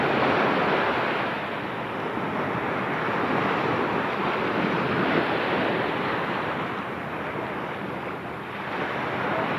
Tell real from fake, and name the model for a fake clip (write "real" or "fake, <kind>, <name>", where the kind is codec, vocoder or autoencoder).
real